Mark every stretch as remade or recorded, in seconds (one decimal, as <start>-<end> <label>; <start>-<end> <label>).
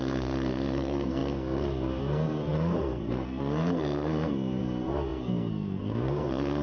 0.0-6.6 remade